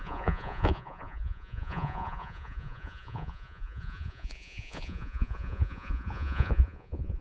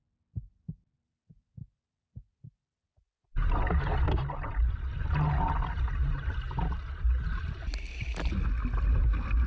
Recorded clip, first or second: second